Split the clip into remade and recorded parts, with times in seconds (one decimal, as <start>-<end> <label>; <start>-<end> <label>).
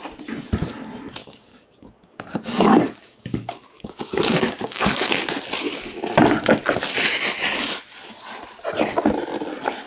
0.0-1.2 recorded; 1.2-5.2 remade; 5.2-9.9 recorded